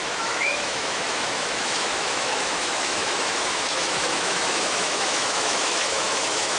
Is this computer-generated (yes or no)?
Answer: yes